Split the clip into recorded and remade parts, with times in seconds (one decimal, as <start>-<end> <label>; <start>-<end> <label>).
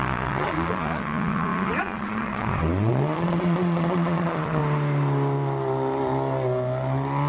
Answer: 0.0-4.6 remade; 4.6-7.3 recorded